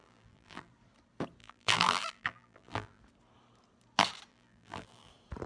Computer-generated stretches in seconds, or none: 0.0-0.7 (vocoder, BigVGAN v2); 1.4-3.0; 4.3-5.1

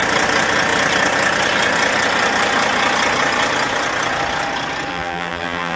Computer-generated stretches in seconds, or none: 4.9-5.8 (vocoder, BigVGAN v2)

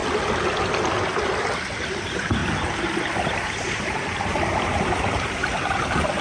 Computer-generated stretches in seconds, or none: 1.9-2.4 (vocoder, BigVGAN v2); 3.0-6.2

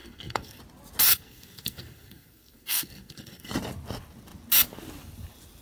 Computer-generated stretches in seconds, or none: 0.0-0.6 (codec, SNAC); 1.1-3.5

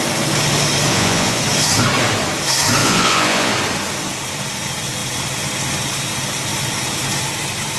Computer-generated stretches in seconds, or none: 0.9-1.4 (vocoder, Vocos); 2.8-3.5

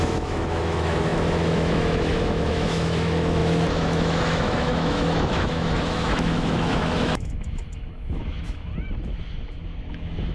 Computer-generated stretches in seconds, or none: 0.0-8.7 (autoencoder, DAC-VAE); 9.9-10.3

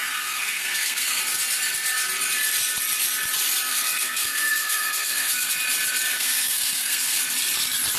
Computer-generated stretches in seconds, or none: 0.0-1.2 (codec, SNAC); 3.7-5.5; 6.1-7.2